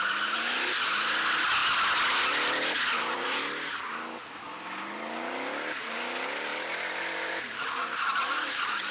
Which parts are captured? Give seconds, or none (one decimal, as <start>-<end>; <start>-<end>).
0.0-1.6; 3.4-6.5; 7.6-8.9